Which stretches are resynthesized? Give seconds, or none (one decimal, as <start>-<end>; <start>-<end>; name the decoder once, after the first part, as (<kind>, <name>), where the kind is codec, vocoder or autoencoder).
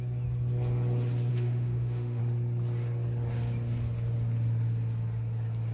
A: 1.3-2.2 (autoencoder, DAC-VAE)